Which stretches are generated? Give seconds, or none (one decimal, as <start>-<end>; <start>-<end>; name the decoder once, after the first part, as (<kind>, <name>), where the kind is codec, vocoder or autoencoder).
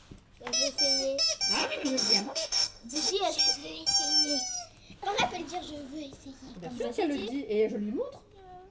1.6-3.1 (codec, DAC)